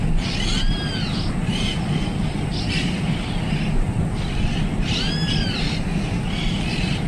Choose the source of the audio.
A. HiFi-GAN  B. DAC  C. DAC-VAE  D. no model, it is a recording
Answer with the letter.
D